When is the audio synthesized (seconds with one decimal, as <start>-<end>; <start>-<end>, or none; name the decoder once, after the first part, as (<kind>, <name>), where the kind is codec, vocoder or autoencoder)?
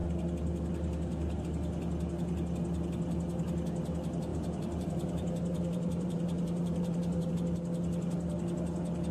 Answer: 4.3-7.3 (vocoder, BigVGAN v2)